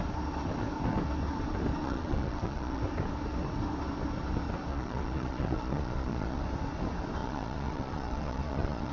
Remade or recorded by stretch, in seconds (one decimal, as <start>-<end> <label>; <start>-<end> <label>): 0.0-1.8 recorded; 1.8-2.8 remade; 2.8-4.7 recorded; 4.7-6.4 remade; 6.4-7.2 recorded; 7.2-8.9 remade